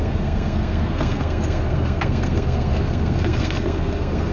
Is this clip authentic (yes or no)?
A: no